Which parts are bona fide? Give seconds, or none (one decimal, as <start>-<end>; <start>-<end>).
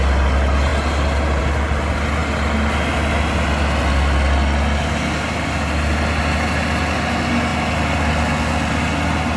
0.0-9.4